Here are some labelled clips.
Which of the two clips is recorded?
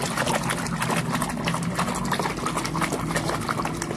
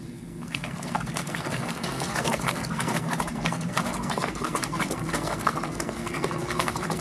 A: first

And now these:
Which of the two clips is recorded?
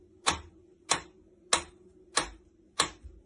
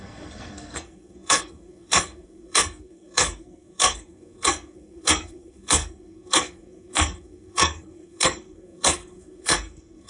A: first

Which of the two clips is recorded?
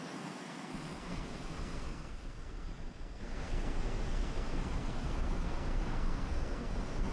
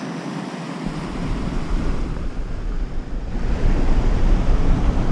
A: second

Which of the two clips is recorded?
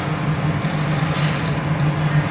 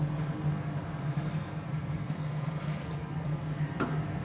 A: first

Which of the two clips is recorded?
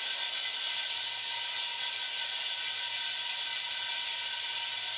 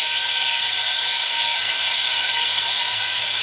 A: first